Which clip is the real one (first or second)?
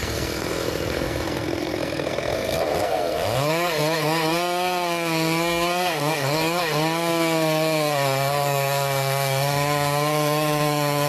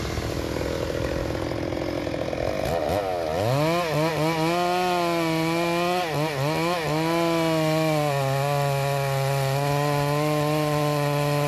second